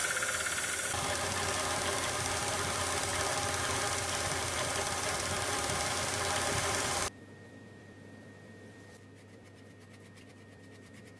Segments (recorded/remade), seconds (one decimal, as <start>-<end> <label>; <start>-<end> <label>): 0.0-0.7 recorded; 0.7-11.2 remade